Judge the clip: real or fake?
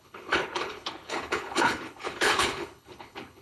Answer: fake